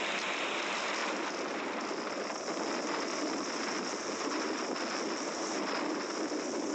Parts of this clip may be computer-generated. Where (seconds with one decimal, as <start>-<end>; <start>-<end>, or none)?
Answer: none